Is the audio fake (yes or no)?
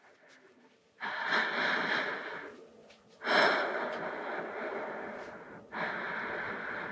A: no